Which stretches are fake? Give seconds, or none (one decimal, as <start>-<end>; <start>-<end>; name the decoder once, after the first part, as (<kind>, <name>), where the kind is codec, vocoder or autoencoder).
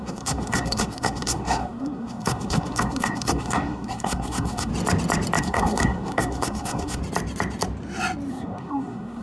0.0-4.7 (codec, SNAC); 5.4-7.0; 8.3-9.2